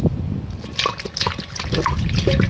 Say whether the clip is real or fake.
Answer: real